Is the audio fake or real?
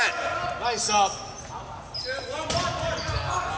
real